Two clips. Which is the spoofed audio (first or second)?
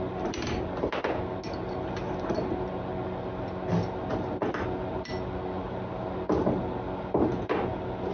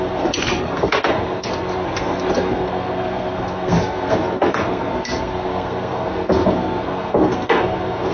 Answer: second